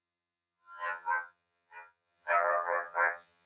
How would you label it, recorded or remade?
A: remade